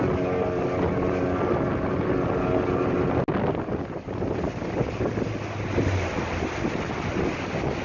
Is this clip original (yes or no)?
yes